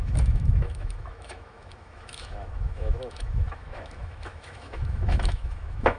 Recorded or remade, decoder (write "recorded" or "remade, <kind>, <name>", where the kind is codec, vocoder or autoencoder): remade, autoencoder, DAC-VAE